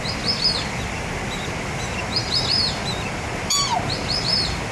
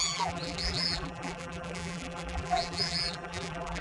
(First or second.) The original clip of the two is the first